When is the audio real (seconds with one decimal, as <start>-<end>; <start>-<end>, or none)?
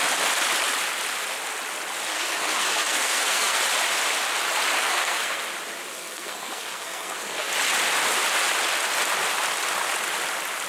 0.0-2.1; 3.6-4.8; 5.4-5.9; 7.5-10.7